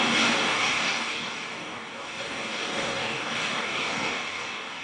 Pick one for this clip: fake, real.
fake